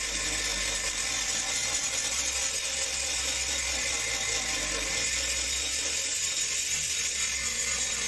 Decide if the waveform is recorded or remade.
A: recorded